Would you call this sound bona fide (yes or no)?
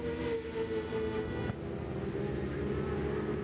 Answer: yes